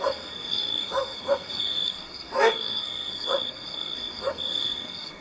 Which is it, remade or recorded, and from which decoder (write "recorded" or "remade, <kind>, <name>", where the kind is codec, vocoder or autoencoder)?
remade, codec, SNAC